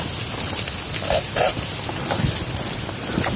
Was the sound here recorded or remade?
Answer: recorded